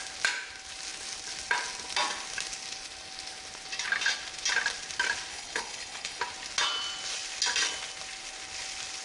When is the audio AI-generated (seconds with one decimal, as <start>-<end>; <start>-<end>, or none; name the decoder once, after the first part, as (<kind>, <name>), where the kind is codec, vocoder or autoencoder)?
5.3-6.2 (codec, HILCodec)